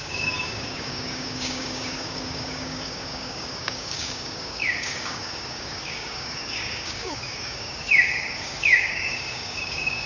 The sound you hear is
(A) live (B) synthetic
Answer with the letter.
B